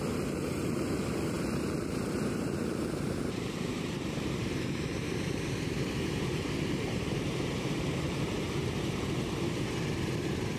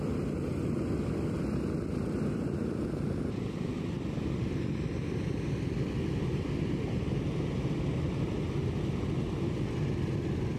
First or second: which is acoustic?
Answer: second